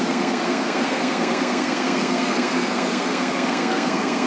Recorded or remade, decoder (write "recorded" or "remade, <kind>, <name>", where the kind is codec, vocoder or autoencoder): remade, codec, SNAC